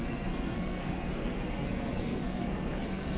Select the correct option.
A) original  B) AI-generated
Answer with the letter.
B